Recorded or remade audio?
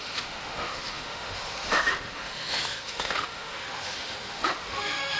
remade